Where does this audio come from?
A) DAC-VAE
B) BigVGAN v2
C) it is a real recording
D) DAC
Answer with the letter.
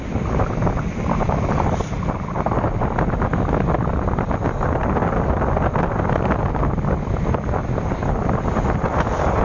C